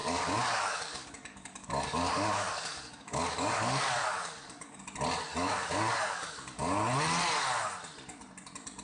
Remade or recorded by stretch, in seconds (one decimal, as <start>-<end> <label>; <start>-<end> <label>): 0.0-4.8 remade; 4.8-5.3 recorded; 5.3-6.7 remade; 6.7-8.8 recorded